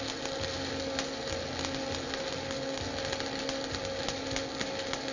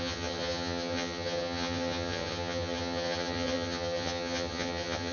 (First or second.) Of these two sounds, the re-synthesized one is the second